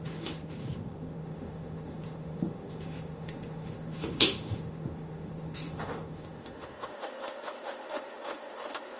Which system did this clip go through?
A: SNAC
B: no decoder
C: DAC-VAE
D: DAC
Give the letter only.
C